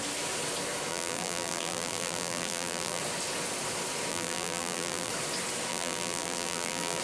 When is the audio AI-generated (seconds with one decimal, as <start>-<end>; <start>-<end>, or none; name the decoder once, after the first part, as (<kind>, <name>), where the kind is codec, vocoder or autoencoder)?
0.9-3.0 (vocoder, BigVGAN v2); 4.1-5.1; 5.7-7.0